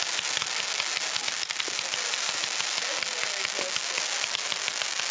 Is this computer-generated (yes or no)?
no